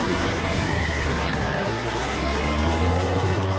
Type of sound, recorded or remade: remade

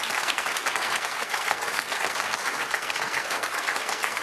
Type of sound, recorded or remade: remade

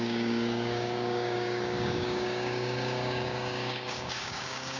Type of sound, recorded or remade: remade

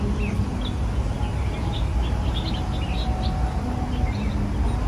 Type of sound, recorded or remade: recorded